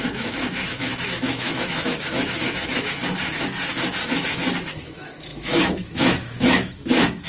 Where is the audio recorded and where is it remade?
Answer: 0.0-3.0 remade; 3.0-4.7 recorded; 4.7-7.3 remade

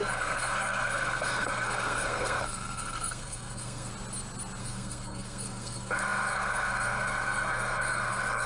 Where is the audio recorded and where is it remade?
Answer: 0.0-3.9 remade; 3.9-4.6 recorded; 4.6-8.5 remade

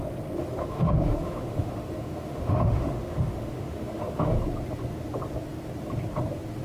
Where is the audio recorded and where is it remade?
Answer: 0.0-0.6 recorded; 0.6-4.4 remade; 4.4-6.6 recorded

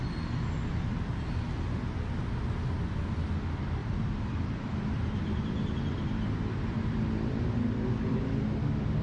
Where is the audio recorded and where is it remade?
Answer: 0.0-3.8 recorded; 3.8-6.8 remade; 6.8-9.0 recorded

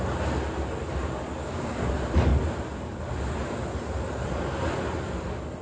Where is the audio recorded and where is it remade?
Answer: 0.0-1.4 recorded; 1.4-1.9 remade; 1.9-5.6 recorded